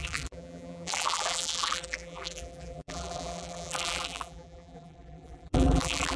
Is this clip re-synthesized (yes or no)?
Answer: yes